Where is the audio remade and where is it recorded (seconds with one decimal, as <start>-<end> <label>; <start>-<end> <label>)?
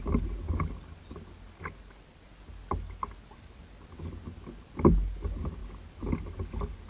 0.0-6.9 recorded